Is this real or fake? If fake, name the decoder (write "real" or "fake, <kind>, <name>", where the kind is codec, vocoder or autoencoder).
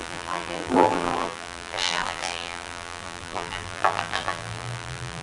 fake, vocoder, BigVGAN v2